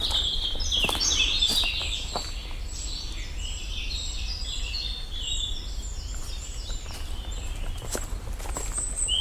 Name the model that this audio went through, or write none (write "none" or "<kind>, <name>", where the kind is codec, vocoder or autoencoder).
none